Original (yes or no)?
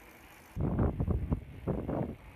yes